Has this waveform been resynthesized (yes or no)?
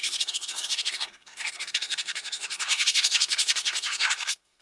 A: yes